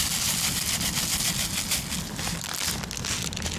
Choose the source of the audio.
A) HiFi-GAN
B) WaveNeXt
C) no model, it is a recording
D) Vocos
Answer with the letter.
C